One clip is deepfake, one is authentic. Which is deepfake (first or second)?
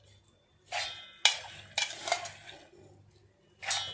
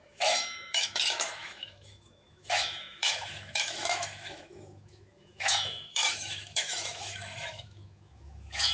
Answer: second